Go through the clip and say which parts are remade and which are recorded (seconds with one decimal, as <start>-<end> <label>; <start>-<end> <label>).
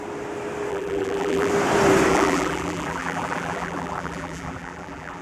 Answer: 0.0-0.7 recorded; 0.7-1.5 remade; 1.5-2.1 recorded; 2.1-5.2 remade